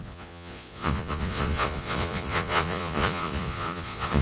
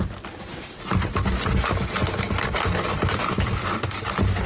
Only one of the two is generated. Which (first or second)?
first